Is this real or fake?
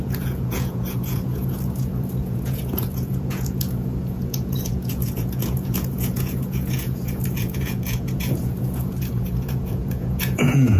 fake